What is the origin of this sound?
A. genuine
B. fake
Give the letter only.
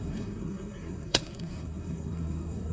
B